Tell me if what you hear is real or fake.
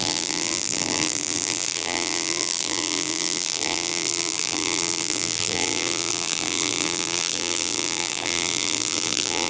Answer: fake